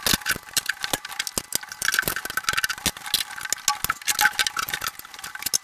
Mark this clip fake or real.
real